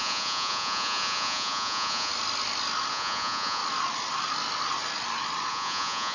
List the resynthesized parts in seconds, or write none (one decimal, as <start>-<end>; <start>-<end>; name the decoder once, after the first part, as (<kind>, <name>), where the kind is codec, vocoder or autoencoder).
0.0-2.1 (vocoder, Vocos); 2.9-3.6; 5.5-6.1